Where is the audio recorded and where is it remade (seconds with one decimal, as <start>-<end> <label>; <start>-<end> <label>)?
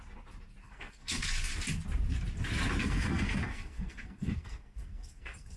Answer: 0.0-0.6 recorded; 0.6-1.5 remade; 1.5-2.8 recorded; 2.8-5.6 remade